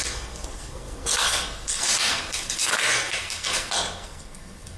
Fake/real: fake